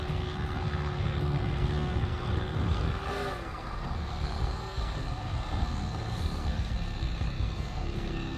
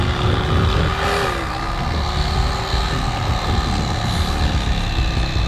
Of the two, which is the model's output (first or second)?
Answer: first